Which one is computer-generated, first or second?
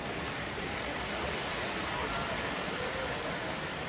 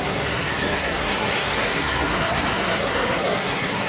second